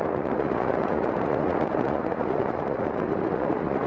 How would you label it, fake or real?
fake